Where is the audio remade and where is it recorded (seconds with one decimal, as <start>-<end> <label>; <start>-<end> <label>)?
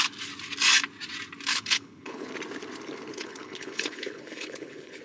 0.0-1.5 recorded; 1.5-2.3 remade; 2.3-3.1 recorded; 3.1-5.0 remade